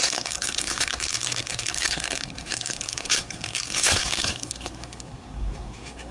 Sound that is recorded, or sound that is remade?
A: remade